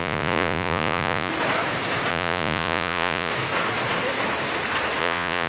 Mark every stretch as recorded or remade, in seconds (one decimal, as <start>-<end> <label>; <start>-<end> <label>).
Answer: 0.0-1.3 remade; 1.3-2.1 recorded; 2.1-3.3 remade; 3.3-5.0 recorded; 5.0-5.5 remade